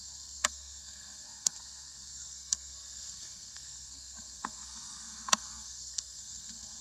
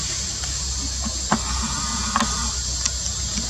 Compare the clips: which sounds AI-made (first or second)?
first